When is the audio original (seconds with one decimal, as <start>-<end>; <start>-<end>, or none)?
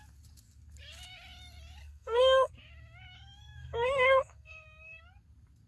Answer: 0.0-1.8; 2.5-3.4; 5.0-5.7